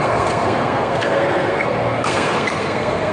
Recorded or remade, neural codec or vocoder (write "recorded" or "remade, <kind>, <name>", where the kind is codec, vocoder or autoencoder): remade, codec, SNAC